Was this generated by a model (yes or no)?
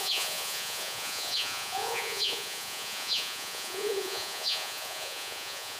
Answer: yes